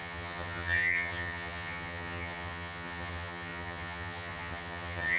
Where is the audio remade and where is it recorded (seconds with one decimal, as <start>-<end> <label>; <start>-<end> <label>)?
0.0-5.2 remade